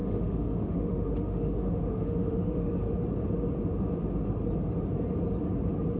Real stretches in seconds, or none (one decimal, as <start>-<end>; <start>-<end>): 2.7-6.0